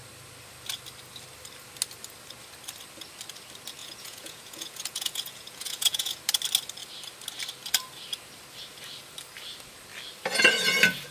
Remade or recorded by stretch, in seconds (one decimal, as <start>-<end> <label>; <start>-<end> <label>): 0.0-3.8 recorded; 3.8-6.2 remade; 6.2-11.1 recorded